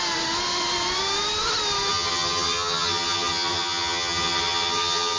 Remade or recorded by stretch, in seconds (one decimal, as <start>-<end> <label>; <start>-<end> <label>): 0.0-1.9 recorded; 1.9-5.2 remade